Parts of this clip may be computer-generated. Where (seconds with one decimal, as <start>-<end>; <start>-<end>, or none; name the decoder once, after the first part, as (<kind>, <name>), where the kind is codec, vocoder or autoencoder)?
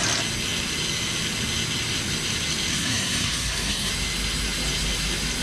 2.7-3.9 (codec, SNAC)